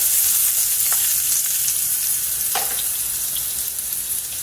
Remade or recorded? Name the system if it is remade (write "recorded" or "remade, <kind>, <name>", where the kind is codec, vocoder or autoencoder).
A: recorded